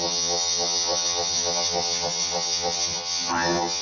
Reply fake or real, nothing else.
fake